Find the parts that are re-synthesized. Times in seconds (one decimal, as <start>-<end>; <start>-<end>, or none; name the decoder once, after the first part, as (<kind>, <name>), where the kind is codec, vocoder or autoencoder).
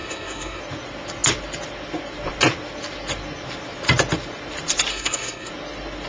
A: 0.0-0.6 (codec, SNAC); 4.9-5.5